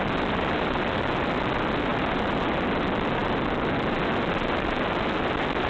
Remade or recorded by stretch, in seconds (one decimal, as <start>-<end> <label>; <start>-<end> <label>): 0.0-5.7 recorded